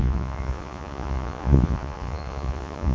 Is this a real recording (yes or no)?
no